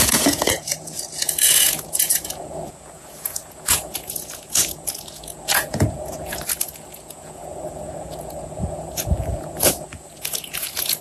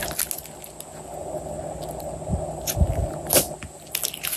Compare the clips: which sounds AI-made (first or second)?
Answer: first